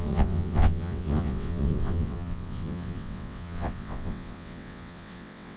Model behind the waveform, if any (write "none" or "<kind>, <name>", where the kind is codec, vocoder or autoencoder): vocoder, WaveNeXt